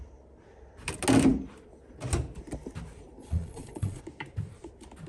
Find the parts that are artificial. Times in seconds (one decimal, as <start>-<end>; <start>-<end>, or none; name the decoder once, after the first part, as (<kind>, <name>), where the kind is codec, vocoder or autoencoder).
3.2-4.0 (vocoder, Vocos)